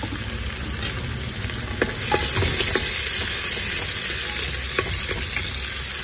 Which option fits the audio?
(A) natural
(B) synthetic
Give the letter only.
A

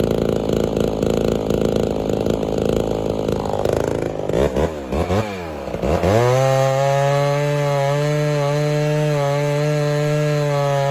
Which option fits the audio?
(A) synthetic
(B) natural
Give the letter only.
B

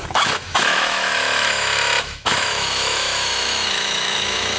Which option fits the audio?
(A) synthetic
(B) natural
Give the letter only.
A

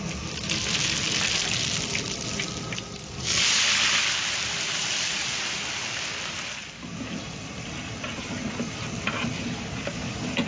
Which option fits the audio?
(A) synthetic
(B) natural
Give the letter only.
B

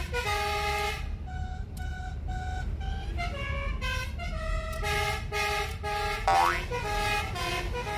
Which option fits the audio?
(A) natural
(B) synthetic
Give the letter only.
A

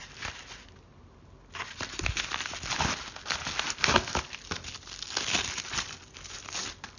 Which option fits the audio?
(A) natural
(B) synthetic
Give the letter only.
A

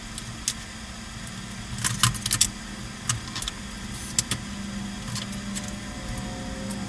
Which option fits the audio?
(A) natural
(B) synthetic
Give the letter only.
A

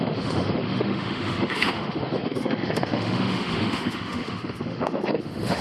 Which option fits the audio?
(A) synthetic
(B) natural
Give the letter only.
A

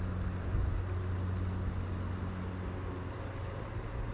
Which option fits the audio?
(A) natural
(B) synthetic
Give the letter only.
A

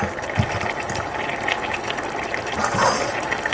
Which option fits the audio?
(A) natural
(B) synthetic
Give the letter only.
A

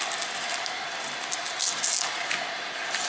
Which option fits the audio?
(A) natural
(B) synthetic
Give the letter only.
A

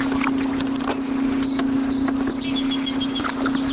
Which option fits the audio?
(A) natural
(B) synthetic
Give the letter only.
A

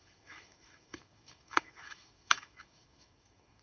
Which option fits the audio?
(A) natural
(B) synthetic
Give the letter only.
B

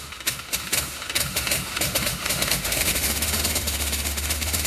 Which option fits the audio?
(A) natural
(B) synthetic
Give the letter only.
B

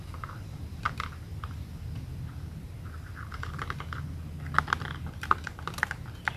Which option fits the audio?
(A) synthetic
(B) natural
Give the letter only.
B